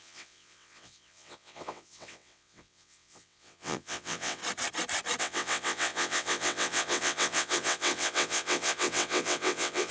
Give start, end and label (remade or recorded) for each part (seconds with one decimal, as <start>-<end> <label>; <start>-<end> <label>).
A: 0.0-4.4 remade; 4.4-5.2 recorded; 5.2-9.9 remade